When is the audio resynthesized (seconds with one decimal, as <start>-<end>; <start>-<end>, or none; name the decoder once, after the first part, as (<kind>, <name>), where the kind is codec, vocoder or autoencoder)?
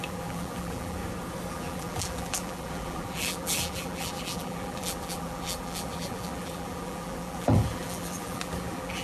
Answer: 0.0-1.0 (vocoder, BigVGAN v2); 1.5-9.0